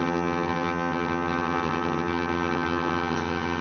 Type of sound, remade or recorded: remade